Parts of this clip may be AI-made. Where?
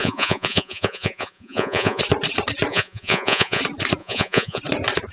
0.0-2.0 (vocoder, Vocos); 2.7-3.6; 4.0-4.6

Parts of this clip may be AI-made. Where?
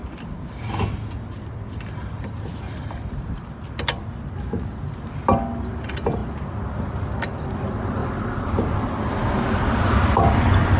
none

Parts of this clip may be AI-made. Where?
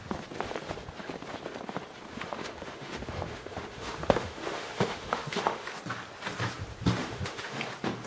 2.1-5.7 (autoencoder, DAC-VAE); 7.0-7.6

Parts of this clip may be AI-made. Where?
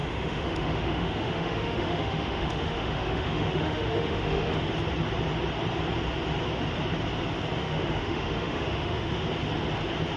0.0-4.7 (autoencoder, DAC-VAE); 7.6-9.3